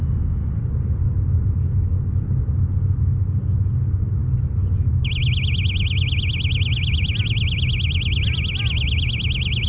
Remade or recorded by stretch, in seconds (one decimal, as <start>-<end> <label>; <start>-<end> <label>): 0.0-9.7 recorded